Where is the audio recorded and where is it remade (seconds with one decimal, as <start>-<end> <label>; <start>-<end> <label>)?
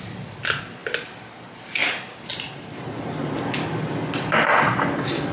0.0-0.8 recorded; 0.8-1.3 remade; 1.3-5.3 recorded